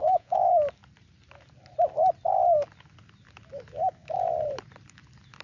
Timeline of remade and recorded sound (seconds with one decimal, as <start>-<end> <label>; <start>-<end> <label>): 0.0-0.5 remade; 0.5-5.4 recorded